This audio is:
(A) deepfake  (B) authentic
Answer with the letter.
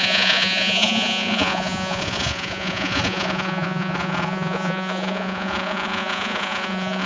A